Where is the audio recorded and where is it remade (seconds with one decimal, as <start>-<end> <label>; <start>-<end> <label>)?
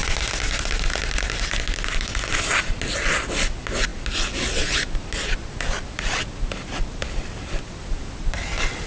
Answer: 0.0-8.9 recorded